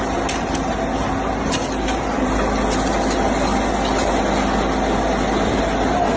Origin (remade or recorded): recorded